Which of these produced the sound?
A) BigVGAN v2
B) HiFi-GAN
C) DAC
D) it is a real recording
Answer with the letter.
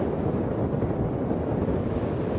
D